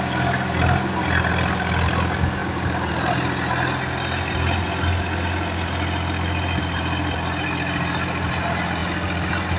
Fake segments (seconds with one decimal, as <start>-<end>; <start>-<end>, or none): none